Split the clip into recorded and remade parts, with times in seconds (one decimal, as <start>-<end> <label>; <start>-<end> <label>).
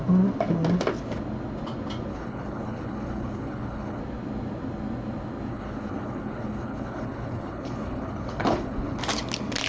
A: 0.0-2.1 recorded; 2.1-4.0 remade; 4.0-5.5 recorded; 5.5-9.0 remade; 9.0-9.7 recorded